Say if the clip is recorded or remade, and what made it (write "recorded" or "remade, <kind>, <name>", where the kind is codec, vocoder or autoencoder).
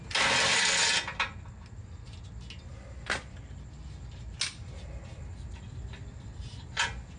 recorded